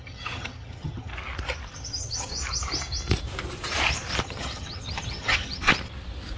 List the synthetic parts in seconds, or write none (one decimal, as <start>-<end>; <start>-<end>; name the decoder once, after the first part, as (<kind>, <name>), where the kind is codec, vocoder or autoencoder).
0.0-1.1 (vocoder, HiFi-GAN); 1.7-2.3; 4.2-5.7